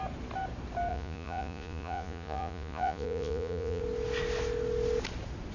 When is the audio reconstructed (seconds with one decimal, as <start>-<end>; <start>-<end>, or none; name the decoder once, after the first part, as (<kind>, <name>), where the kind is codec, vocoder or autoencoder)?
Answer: 0.9-3.8 (vocoder, Vocos)